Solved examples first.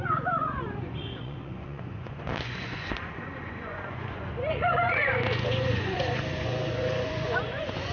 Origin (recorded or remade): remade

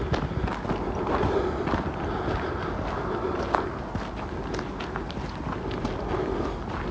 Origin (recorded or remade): recorded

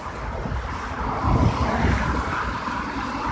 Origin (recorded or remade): recorded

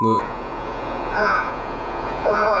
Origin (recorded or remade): remade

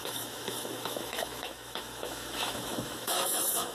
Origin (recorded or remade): remade